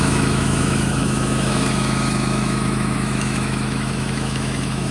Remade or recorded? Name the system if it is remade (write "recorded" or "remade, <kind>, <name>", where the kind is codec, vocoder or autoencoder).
remade, autoencoder, DAC-VAE